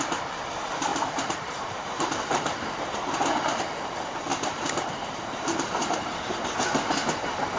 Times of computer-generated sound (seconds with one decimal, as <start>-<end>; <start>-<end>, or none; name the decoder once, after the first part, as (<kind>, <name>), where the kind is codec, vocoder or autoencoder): 0.9-3.1 (vocoder, BigVGAN v2); 4.3-6.3